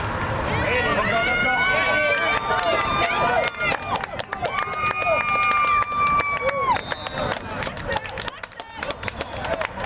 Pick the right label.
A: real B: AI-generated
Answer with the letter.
A